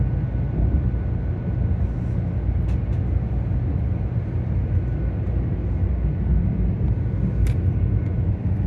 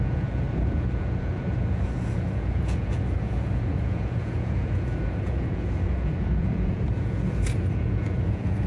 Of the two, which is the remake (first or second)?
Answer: second